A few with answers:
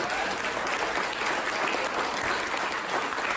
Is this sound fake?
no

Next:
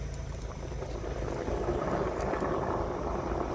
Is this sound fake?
no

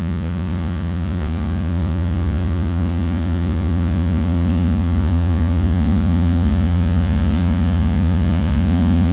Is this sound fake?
yes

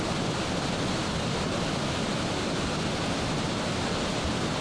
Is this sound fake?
no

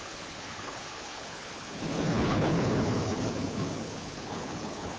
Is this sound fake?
yes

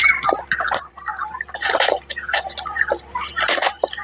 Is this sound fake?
yes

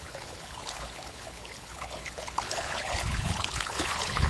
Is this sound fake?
yes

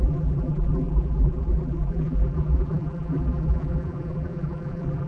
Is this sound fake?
yes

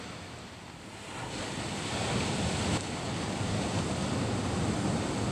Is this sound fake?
no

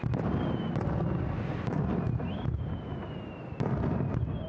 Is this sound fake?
no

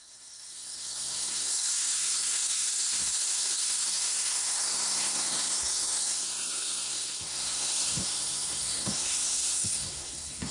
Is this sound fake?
yes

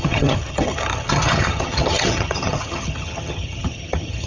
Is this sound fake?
yes